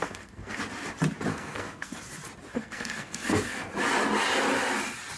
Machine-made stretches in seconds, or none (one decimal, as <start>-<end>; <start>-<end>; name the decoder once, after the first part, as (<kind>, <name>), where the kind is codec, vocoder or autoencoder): 0.0-0.6 (codec, SNAC); 1.3-2.0; 2.5-3.7